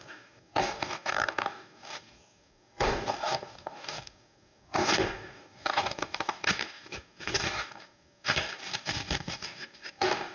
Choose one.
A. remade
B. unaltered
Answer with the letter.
A